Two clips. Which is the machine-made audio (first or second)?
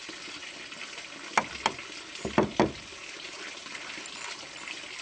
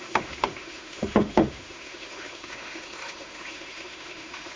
second